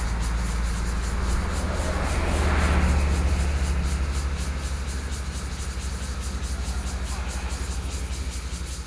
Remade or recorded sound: recorded